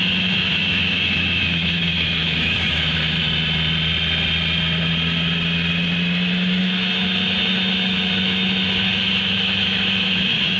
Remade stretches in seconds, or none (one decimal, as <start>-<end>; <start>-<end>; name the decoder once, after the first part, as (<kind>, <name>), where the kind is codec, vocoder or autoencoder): 0.0-3.2 (autoencoder, DAC-VAE); 6.6-10.6